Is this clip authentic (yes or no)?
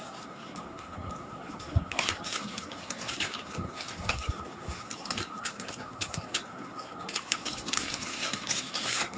no